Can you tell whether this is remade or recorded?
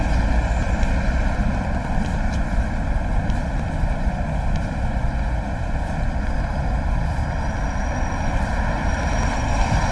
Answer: recorded